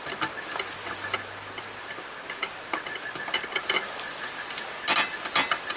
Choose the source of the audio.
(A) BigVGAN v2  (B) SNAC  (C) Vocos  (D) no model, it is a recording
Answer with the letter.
D